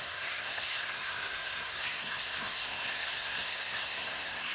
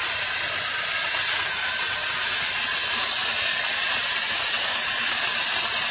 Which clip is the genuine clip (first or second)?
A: second